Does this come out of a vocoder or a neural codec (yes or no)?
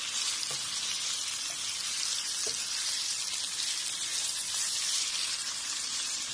no